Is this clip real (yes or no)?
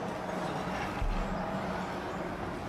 yes